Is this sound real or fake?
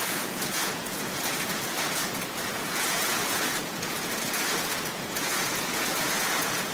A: fake